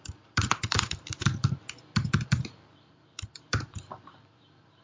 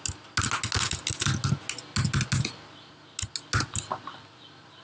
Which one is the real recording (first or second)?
second